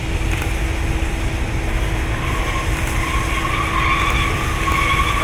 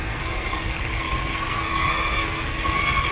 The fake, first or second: second